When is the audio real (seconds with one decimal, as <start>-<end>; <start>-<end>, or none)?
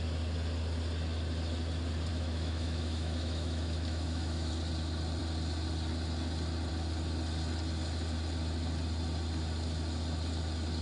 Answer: 0.0-2.1; 4.5-10.8